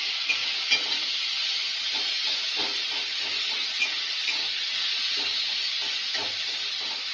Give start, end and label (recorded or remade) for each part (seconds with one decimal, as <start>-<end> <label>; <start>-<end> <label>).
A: 0.0-7.1 recorded